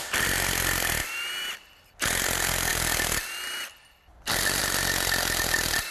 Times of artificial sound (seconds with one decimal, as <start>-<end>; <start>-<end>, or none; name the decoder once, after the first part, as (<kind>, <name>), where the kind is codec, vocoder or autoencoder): none